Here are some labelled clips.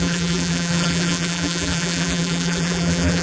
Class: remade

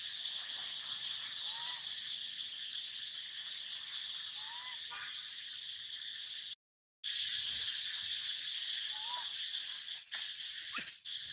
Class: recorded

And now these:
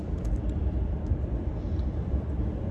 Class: remade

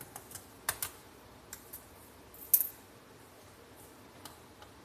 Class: recorded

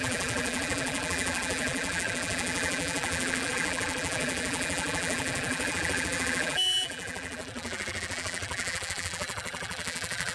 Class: remade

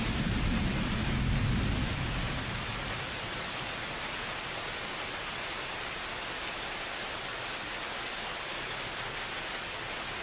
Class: remade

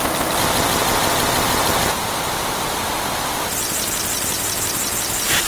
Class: recorded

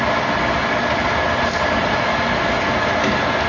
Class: recorded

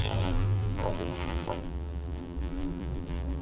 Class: remade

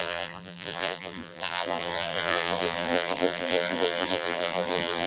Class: remade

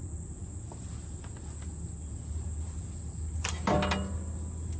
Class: recorded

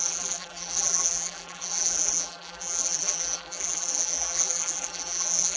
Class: remade